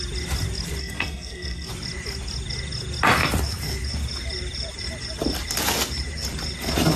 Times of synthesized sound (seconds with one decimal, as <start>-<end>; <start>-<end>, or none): 0.8-1.7